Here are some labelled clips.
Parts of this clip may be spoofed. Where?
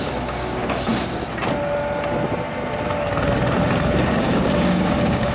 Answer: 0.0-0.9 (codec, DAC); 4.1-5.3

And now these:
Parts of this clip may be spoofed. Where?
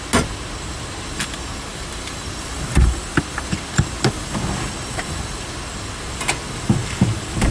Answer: 1.7-3.1 (vocoder, BigVGAN v2)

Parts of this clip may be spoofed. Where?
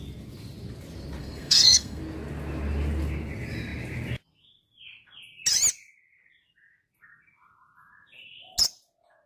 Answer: 1.2-2.0 (codec, SNAC)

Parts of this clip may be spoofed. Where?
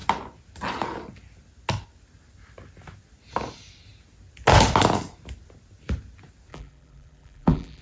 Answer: 6.5-7.8 (vocoder, BigVGAN v2)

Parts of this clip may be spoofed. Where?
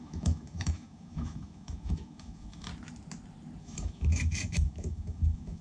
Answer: 0.0-2.7 (autoencoder, DAC-VAE); 3.6-5.6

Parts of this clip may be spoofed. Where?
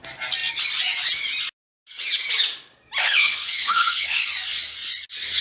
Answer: 3.0-4.3 (codec, HILCodec)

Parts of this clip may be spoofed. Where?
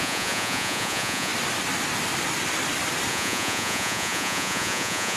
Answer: 0.0-1.3 (vocoder, Vocos); 3.1-5.2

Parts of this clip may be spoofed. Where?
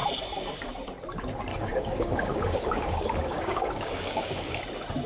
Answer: 1.5-4.6 (codec, DAC)